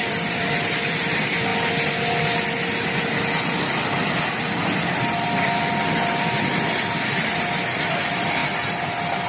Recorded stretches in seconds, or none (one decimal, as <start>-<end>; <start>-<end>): 1.5-4.9; 8.4-9.3